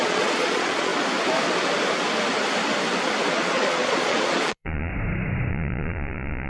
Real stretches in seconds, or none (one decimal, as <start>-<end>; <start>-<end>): 0.9-3.3; 4.9-5.5